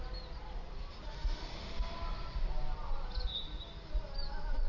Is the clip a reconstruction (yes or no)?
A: no